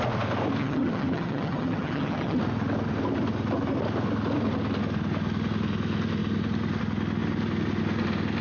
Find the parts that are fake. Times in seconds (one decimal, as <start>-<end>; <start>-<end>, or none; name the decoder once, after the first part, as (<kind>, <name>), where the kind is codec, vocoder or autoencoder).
0.6-2.4 (vocoder, HiFi-GAN)